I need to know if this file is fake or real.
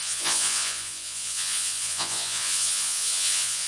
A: fake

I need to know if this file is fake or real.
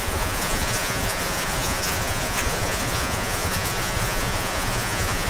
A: fake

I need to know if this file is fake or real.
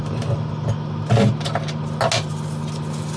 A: real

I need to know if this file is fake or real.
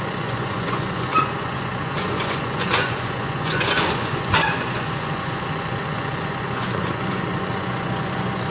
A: fake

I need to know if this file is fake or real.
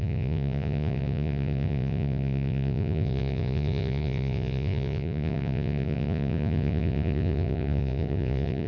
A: fake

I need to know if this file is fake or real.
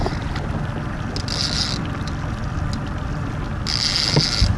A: real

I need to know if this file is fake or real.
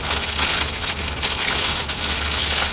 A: real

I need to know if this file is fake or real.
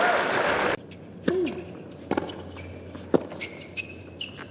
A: real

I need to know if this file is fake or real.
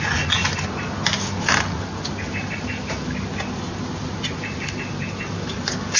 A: real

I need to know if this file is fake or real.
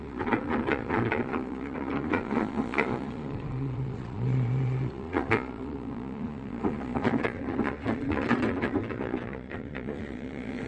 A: fake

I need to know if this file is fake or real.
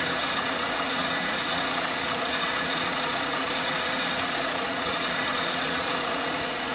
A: fake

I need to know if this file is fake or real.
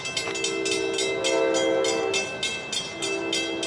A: real